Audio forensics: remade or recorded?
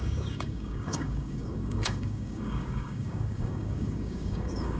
remade